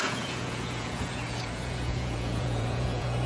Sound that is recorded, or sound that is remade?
remade